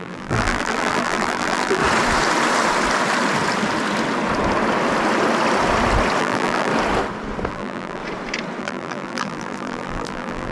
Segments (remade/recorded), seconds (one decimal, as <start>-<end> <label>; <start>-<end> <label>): 0.0-1.8 remade; 1.8-6.2 recorded; 6.2-6.7 remade; 6.7-7.5 recorded; 7.5-8.0 remade; 8.0-8.6 recorded; 8.6-10.5 remade